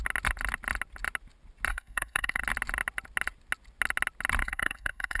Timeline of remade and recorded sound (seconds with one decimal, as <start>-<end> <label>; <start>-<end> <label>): 0.0-1.7 recorded; 1.7-2.4 remade; 2.4-4.4 recorded; 4.4-5.2 remade